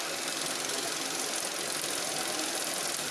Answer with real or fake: real